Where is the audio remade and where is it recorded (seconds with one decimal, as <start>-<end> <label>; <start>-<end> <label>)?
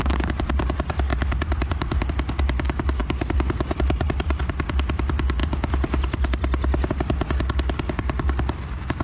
0.0-1.1 recorded; 1.1-2.1 remade; 2.1-3.0 recorded; 3.0-4.4 remade; 4.4-9.0 recorded